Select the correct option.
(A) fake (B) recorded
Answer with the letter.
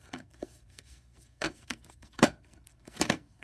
A